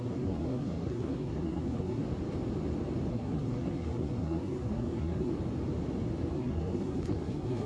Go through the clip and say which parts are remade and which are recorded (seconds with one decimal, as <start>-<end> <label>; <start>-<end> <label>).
0.0-2.0 remade; 2.0-3.1 recorded; 3.1-5.3 remade; 5.3-6.3 recorded; 6.3-7.7 remade